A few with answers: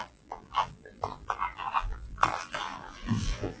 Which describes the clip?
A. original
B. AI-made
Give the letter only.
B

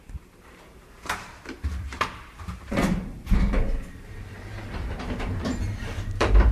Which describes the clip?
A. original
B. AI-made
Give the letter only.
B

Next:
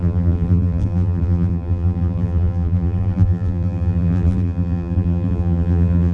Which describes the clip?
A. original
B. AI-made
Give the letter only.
B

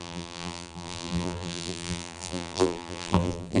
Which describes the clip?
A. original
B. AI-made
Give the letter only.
B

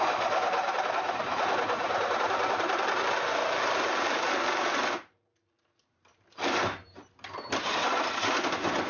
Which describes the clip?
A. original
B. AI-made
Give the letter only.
B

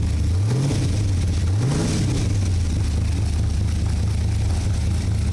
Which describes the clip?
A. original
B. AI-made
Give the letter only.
A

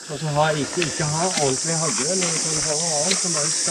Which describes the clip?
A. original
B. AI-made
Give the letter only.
A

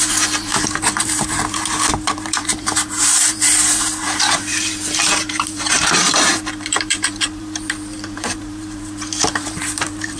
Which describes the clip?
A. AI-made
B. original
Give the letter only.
A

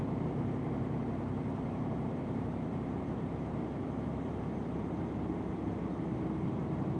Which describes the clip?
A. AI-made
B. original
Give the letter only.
A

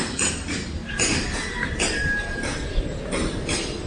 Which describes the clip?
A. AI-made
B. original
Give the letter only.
A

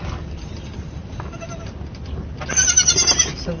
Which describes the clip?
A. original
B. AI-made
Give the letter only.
A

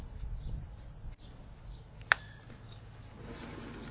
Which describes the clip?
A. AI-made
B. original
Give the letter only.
B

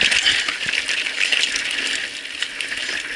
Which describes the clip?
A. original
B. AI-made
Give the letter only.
A